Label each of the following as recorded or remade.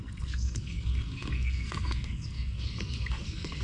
remade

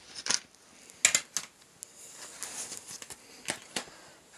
recorded